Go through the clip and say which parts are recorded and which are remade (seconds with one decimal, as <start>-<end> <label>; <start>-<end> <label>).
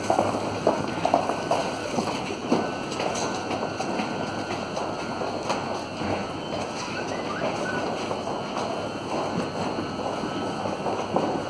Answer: 0.0-1.8 recorded; 1.8-2.5 remade; 2.5-11.5 recorded